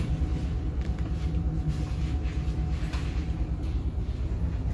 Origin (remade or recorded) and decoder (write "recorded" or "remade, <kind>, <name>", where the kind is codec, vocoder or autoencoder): recorded